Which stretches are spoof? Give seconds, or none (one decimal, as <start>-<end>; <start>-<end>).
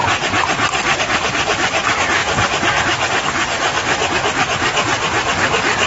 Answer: none